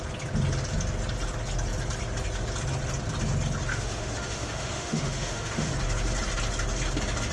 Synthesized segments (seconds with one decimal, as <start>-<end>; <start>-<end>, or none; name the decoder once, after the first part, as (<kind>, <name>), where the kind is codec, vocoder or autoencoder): 3.7-5.7 (autoencoder, DAC-VAE)